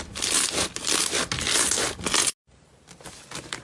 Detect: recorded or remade recorded